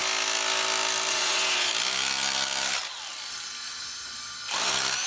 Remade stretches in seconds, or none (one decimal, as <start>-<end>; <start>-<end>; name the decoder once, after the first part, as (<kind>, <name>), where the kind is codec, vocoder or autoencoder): 1.1-1.7 (vocoder, Vocos)